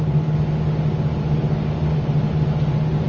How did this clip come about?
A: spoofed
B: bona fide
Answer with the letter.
B